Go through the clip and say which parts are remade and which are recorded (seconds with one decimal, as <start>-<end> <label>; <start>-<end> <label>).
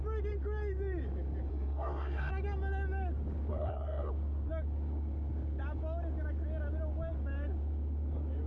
0.0-1.5 recorded; 1.5-2.3 remade; 2.3-3.5 recorded; 3.5-4.1 remade; 4.1-8.5 recorded